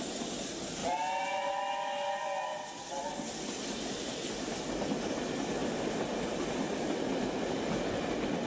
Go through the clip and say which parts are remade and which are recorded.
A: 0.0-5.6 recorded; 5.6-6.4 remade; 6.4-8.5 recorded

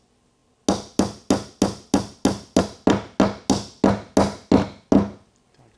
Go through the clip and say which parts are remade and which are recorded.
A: 0.0-5.8 recorded

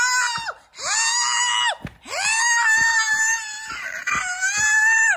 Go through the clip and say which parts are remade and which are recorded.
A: 0.0-2.3 recorded; 2.3-5.2 remade

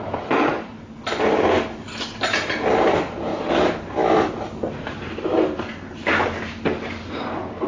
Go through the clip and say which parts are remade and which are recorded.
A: 0.0-0.5 remade; 0.5-2.9 recorded; 2.9-3.3 remade; 3.3-6.8 recorded; 6.8-7.7 remade

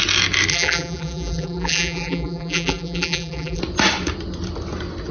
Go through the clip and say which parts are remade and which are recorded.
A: 0.0-0.5 recorded; 0.5-3.6 remade; 3.6-5.1 recorded

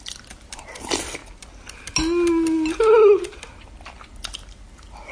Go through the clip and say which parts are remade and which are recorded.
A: 0.0-5.1 recorded